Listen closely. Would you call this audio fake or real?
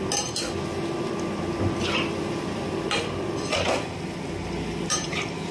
real